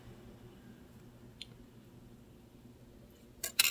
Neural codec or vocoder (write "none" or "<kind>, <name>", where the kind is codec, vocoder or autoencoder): none